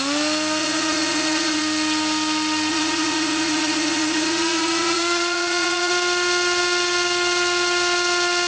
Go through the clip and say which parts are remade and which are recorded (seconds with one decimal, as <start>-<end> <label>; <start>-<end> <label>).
0.0-0.6 recorded; 0.6-1.6 remade; 1.6-2.7 recorded; 2.7-5.9 remade; 5.9-8.5 recorded